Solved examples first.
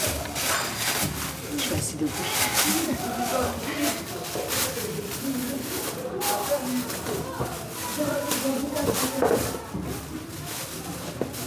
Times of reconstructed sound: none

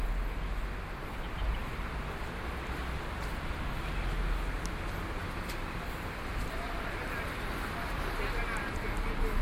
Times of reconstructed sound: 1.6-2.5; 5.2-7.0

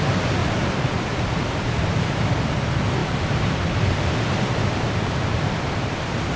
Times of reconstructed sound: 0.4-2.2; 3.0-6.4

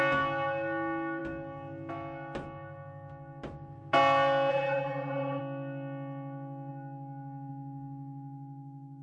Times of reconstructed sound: 4.5-5.4